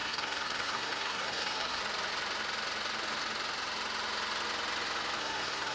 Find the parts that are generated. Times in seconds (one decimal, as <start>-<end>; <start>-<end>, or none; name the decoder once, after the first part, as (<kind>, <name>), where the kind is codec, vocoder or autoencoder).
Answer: 0.0-1.8 (codec, SNAC); 5.2-5.7